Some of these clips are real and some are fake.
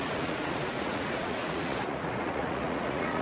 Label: fake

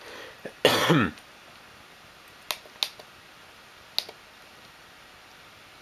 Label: real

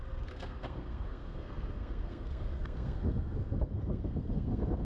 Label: fake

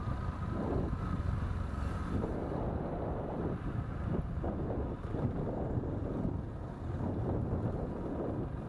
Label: real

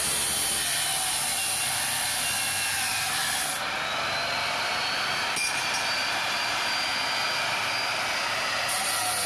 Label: real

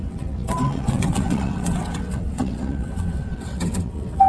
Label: fake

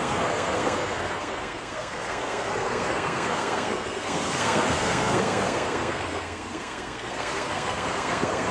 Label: fake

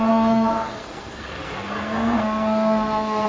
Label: fake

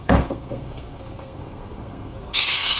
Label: fake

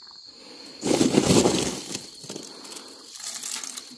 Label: real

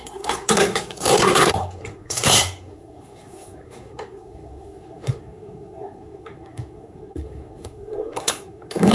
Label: fake